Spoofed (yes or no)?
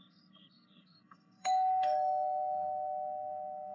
yes